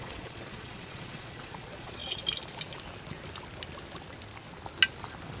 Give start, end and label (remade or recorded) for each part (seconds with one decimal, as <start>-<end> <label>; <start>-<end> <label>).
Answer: 0.0-2.0 remade; 2.0-5.4 recorded